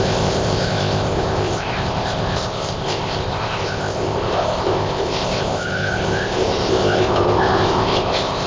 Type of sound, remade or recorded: remade